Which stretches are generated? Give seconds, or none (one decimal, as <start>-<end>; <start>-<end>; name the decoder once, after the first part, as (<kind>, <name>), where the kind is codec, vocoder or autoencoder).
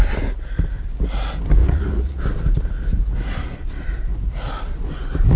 1.6-2.2 (vocoder, Vocos)